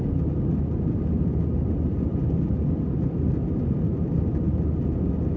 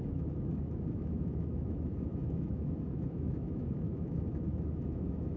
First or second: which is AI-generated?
second